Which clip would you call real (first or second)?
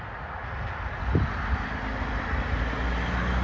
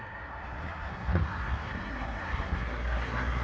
first